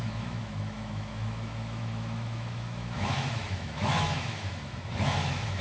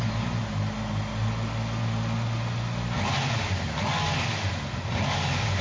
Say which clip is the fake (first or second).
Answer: first